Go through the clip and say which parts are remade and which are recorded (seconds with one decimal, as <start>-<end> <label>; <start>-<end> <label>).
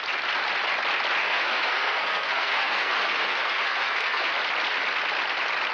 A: 0.0-1.2 recorded; 1.2-4.3 remade; 4.3-5.7 recorded